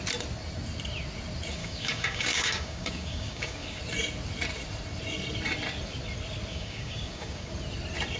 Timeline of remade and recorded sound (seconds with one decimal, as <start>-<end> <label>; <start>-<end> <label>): 0.0-1.6 recorded; 1.6-3.8 remade; 3.8-6.5 recorded; 6.5-7.5 remade; 7.5-8.2 recorded